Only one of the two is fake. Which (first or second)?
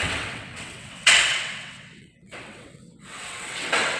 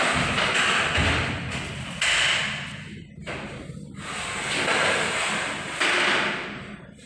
first